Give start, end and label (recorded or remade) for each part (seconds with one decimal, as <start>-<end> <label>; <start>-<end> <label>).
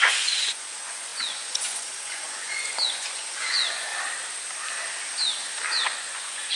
0.0-3.9 remade; 3.9-5.8 recorded; 5.8-6.6 remade